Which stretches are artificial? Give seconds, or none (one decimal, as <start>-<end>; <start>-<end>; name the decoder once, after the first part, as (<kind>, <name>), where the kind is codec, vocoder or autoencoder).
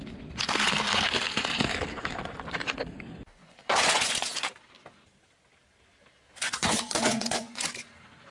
3.3-4.4 (vocoder, Vocos); 6.4-7.9